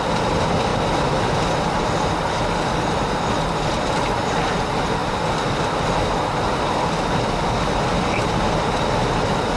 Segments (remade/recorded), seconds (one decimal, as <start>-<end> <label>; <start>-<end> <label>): 0.0-0.7 remade; 0.7-1.8 recorded; 1.8-9.6 remade